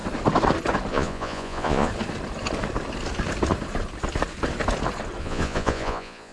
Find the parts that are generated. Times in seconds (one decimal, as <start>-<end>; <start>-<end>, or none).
0.9-1.9; 5.2-6.3